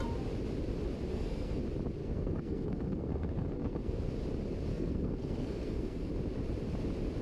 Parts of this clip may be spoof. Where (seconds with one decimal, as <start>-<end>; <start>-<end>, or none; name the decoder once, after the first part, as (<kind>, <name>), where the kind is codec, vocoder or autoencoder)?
1.1-1.6 (codec, SNAC); 2.0-4.1; 4.7-6.1